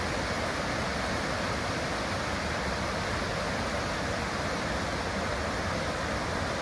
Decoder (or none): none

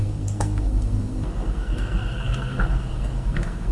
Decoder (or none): codec, SNAC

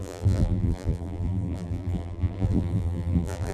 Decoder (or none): vocoder, BigVGAN v2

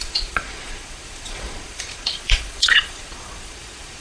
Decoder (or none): vocoder, Vocos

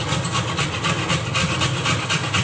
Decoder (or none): none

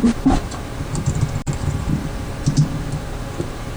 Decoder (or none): vocoder, BigVGAN v2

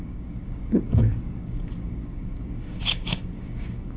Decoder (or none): codec, DAC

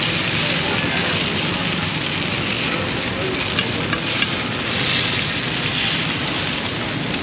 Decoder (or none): none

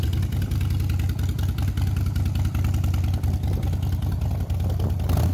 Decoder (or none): none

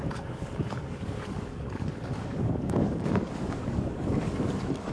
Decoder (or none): codec, DAC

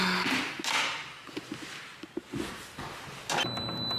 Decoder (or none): none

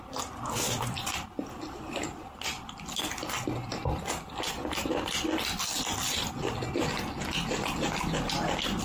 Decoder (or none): none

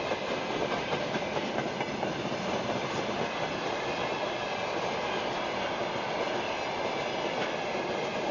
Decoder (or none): none